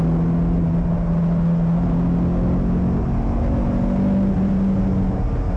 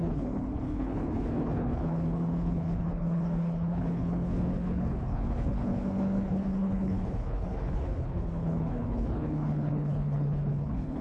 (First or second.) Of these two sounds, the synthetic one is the second